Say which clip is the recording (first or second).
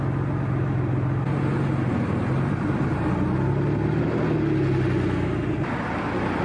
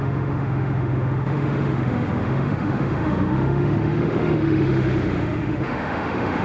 first